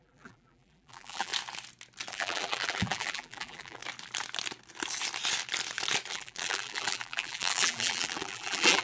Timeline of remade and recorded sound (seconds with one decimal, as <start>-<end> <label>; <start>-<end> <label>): 0.0-1.3 remade; 1.3-2.1 recorded; 2.1-3.8 remade; 3.8-6.1 recorded; 6.1-8.8 remade